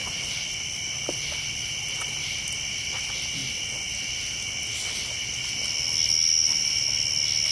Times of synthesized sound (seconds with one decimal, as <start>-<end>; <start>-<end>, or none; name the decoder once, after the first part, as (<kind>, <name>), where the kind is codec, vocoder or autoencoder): none